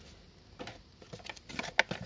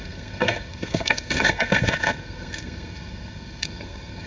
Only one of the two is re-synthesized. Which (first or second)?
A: second